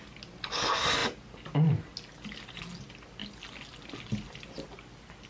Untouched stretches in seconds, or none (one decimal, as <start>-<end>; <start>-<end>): 0.0-5.3